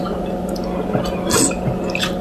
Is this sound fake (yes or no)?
no